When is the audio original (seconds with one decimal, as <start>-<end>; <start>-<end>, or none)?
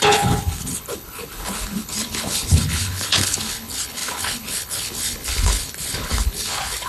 none